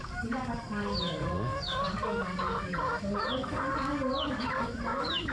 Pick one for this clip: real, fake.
fake